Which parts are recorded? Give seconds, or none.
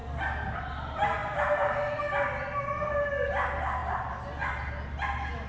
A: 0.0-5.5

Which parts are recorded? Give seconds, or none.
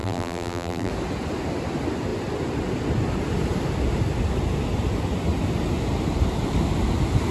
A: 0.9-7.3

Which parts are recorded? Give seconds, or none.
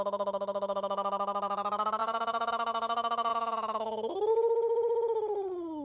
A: 0.0-2.0; 2.5-5.8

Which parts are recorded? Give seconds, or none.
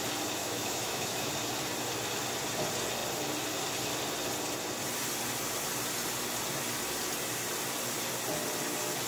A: 0.0-0.4; 1.3-9.1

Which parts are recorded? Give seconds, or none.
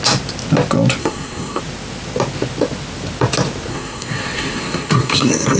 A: 0.0-1.0; 1.6-3.7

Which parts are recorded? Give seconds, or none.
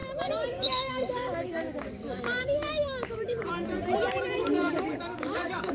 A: 3.4-4.4